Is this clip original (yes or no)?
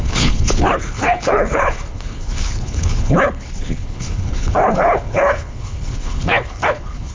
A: no